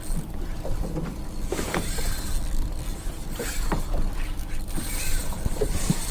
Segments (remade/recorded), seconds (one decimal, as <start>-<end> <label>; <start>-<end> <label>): 0.0-2.9 recorded; 2.9-3.5 remade; 3.5-5.2 recorded; 5.2-6.1 remade